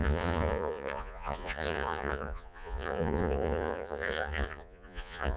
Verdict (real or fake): fake